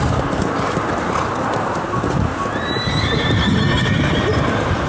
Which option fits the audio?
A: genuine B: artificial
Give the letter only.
A